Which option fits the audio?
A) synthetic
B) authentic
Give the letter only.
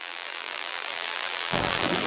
A